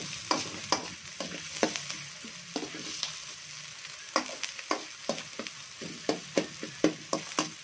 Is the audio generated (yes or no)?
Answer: no